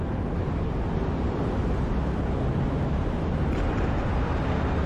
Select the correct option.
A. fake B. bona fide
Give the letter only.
B